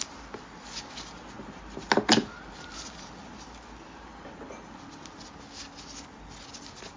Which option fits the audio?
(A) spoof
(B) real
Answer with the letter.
B